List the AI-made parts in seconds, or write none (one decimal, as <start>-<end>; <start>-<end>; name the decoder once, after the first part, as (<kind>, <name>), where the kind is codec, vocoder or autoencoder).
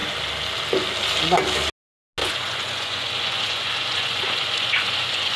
2.2-5.4 (vocoder, Vocos)